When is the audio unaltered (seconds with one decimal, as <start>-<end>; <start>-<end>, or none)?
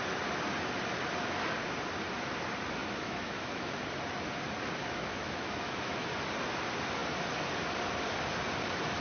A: 0.0-2.8; 3.8-4.8; 6.1-9.0